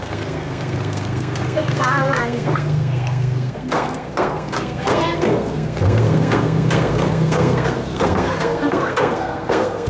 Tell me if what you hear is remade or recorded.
remade